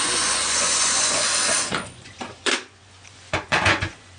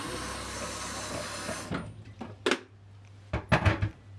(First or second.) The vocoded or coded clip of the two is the first